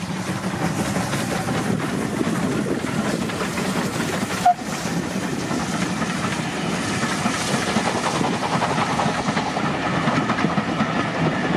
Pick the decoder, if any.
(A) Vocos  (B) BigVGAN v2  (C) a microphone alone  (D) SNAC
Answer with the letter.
C